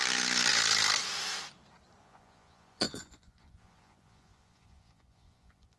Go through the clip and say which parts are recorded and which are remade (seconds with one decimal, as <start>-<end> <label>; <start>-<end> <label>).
0.0-2.0 recorded; 2.0-5.8 remade